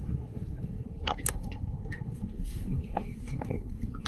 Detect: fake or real fake